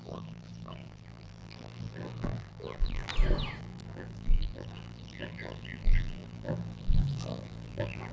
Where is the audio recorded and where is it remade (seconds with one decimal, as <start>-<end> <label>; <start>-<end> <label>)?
0.0-3.1 remade; 3.1-3.6 recorded; 3.6-8.1 remade